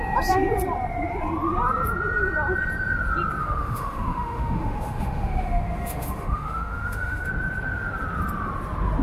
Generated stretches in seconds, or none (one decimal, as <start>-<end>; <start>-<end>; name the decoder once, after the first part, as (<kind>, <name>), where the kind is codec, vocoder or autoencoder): 3.4-7.3 (autoencoder, DAC-VAE)